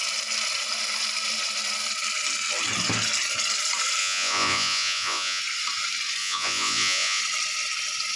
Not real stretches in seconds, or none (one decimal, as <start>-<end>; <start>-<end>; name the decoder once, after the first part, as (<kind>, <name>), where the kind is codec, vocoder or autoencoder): 4.0-5.4 (vocoder, Vocos); 6.2-7.2